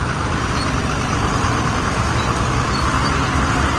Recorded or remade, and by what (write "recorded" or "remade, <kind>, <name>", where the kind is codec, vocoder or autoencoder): remade, vocoder, BigVGAN v2